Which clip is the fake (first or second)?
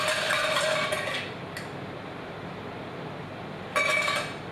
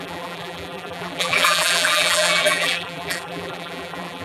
second